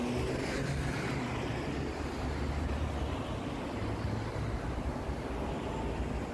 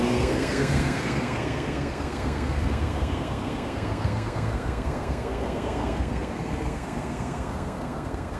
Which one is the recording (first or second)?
first